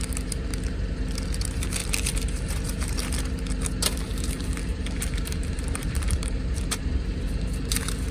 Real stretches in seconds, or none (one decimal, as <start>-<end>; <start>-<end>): 0.0-1.8; 3.2-4.1